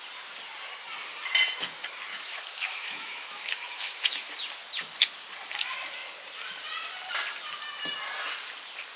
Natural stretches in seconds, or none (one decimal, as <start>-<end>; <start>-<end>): 0.0-2.1; 4.3-9.0